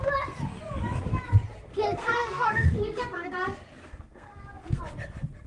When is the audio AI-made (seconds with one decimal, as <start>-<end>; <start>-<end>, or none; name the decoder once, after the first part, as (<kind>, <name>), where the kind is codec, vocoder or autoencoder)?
1.7-3.3 (codec, SNAC); 3.8-4.8